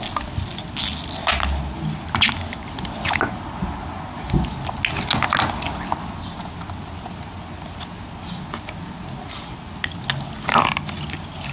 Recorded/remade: recorded